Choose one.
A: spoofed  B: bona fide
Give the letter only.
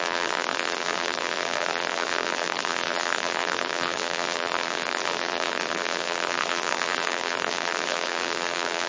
A